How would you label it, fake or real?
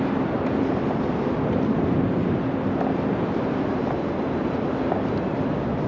real